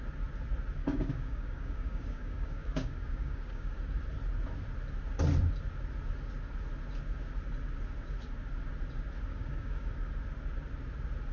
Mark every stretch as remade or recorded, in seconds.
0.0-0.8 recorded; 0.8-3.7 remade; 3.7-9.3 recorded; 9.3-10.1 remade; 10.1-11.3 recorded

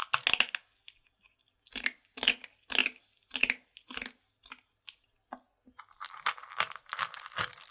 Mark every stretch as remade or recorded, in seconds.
0.0-7.7 recorded

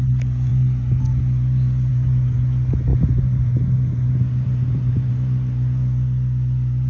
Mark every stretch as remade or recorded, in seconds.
0.0-6.9 recorded

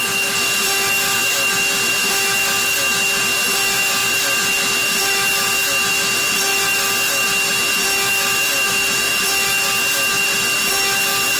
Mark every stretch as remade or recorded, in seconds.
0.0-11.4 recorded

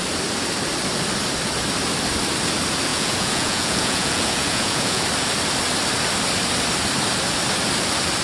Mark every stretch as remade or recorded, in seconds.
0.0-2.9 recorded; 2.9-5.0 remade; 5.0-8.2 recorded